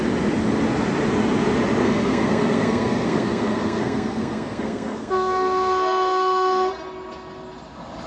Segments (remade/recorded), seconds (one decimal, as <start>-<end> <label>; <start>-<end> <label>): 0.0-1.8 recorded; 1.8-6.7 remade; 6.7-8.1 recorded